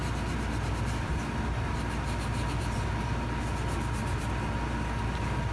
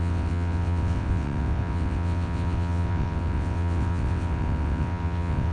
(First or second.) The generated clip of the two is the second